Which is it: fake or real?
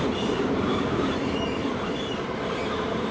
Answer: fake